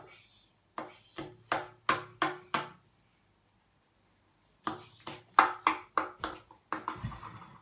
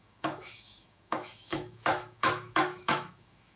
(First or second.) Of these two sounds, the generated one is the second